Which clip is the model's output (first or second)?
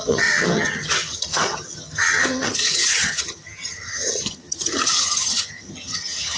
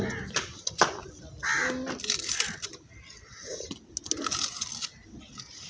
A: first